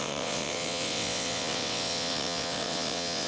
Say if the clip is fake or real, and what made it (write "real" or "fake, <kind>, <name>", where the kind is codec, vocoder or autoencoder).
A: fake, vocoder, WaveNeXt